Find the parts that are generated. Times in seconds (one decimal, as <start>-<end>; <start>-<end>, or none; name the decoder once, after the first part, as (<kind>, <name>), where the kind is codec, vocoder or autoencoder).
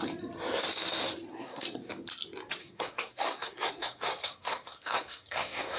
1.3-1.9 (codec, SNAC); 2.6-5.8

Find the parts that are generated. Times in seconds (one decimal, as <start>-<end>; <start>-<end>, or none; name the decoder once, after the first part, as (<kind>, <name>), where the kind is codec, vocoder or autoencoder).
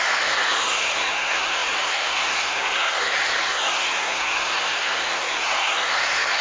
0.0-6.4 (codec, SNAC)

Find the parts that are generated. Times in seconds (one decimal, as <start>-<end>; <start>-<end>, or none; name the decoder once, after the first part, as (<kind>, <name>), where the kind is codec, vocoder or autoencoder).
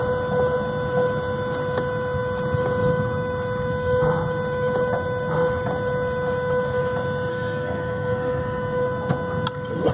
7.3-8.4 (codec, SNAC)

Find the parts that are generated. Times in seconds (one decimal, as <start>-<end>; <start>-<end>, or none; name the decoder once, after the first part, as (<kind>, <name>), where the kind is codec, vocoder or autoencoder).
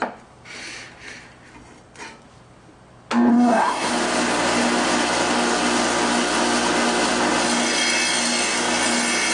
3.3-3.9 (codec, SNAC)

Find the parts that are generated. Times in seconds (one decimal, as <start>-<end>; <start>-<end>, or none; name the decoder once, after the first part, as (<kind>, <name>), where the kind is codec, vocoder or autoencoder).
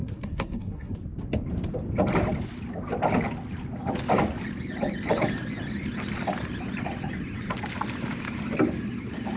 0.0-1.0 (codec, SNAC)